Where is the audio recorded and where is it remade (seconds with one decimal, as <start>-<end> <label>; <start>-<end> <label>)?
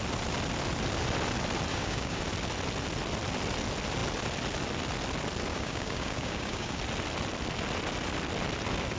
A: 0.0-1.7 recorded; 1.7-2.2 remade; 2.2-5.5 recorded; 5.5-6.8 remade; 6.8-9.0 recorded